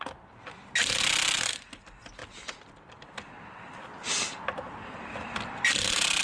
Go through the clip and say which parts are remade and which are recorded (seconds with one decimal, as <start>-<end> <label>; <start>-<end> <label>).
0.0-6.2 recorded